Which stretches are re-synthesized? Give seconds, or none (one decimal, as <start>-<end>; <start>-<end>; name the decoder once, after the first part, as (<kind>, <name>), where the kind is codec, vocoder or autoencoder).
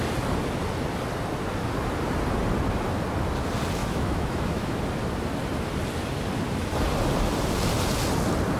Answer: 3.8-4.8 (autoencoder, DAC-VAE)